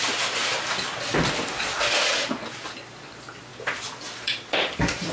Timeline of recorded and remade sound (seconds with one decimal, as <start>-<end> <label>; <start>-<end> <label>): 0.0-3.5 recorded; 3.5-5.1 remade

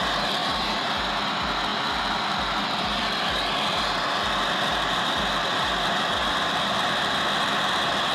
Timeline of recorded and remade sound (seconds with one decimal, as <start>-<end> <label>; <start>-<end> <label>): 0.0-0.4 recorded; 0.4-1.0 remade; 1.0-1.7 recorded; 1.7-3.2 remade; 3.2-8.1 recorded

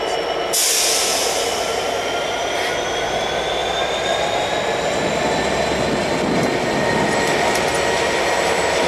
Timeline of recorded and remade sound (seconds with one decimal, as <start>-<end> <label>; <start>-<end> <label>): 0.0-8.9 recorded

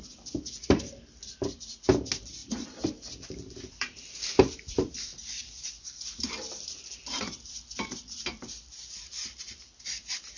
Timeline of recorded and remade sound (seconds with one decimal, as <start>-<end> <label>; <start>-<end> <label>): 0.0-2.4 recorded; 2.4-4.2 remade; 4.2-5.2 recorded; 5.2-7.5 remade; 7.5-10.4 recorded

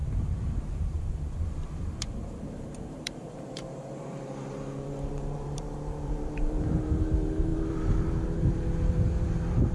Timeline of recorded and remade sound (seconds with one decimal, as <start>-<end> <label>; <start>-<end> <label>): 0.0-9.7 remade

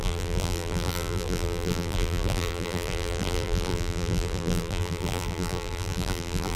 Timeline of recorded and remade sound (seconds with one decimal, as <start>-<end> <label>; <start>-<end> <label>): 0.0-6.6 remade